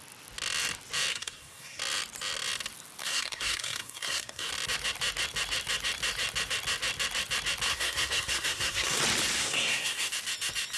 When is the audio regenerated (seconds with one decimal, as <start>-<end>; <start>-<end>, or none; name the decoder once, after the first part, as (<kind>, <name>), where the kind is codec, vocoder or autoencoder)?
1.1-1.8 (codec, SNAC); 3.0-4.5; 7.7-9.0; 9.4-10.1

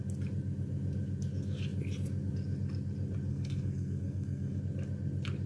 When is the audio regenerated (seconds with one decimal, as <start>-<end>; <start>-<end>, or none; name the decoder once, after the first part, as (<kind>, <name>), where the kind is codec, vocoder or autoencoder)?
3.3-4.6 (codec, SNAC)

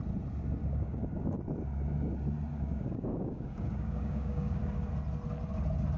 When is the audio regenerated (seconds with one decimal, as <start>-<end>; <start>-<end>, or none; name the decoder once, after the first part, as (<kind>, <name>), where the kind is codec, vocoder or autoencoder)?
0.6-1.4 (codec, DAC); 2.5-4.6

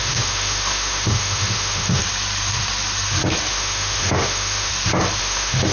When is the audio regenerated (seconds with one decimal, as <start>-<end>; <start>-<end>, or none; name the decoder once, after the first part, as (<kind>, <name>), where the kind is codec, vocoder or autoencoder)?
0.0-2.0 (autoencoder, DAC-VAE); 3.5-4.7; 5.2-5.7

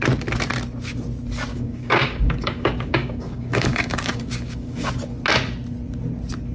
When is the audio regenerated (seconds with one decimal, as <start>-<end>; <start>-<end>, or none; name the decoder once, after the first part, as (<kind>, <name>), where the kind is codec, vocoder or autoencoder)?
1.5-4.9 (codec, DAC)

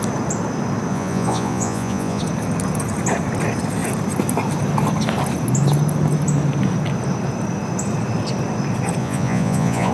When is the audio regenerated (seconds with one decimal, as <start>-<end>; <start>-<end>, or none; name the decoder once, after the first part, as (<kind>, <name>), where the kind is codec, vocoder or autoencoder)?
0.9-2.2 (vocoder, Vocos); 9.0-9.9